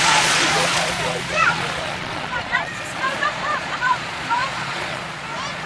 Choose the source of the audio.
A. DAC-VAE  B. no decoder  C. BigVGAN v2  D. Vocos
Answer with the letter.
D